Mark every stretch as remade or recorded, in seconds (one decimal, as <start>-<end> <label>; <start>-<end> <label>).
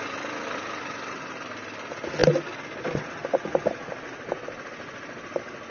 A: 0.0-5.7 recorded